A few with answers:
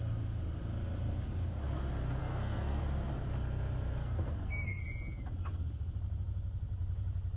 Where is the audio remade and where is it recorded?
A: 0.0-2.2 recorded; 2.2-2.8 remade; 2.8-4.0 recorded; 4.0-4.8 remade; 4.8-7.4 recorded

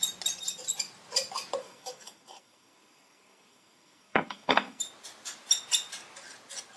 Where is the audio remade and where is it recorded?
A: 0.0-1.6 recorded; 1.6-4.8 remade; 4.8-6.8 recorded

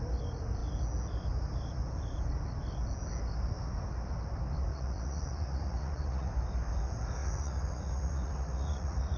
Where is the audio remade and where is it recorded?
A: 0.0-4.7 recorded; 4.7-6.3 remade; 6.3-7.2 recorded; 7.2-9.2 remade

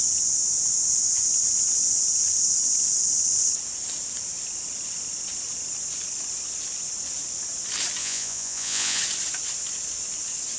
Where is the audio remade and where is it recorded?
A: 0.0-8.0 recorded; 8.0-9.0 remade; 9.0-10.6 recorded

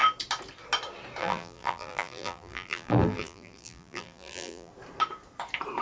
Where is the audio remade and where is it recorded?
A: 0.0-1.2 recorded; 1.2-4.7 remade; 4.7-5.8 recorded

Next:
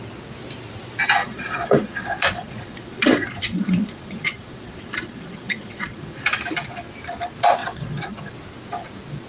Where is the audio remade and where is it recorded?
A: 0.0-1.2 recorded; 1.2-6.2 remade; 6.2-7.6 recorded; 7.6-8.2 remade; 8.2-9.3 recorded

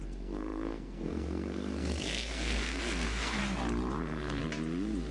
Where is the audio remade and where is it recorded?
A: 0.0-3.4 remade; 3.4-4.0 recorded; 4.0-4.4 remade; 4.4-5.1 recorded

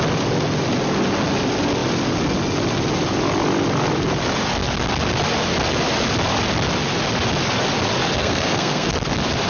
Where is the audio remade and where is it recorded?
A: 0.0-8.2 recorded; 8.2-8.9 remade; 8.9-9.5 recorded